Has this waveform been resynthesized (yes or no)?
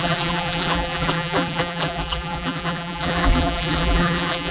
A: yes